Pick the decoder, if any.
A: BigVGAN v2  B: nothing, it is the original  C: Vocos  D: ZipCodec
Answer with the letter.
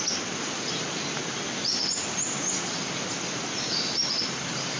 B